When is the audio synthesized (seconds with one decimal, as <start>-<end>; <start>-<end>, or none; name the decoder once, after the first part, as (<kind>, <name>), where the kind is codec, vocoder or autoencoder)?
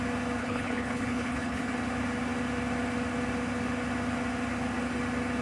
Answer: 0.4-1.7 (codec, HILCodec)